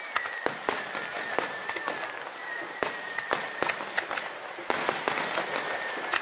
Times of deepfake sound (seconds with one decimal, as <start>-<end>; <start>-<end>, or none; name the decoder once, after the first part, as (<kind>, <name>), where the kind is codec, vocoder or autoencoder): none